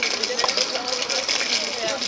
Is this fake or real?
real